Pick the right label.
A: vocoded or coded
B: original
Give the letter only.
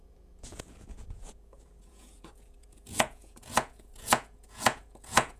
A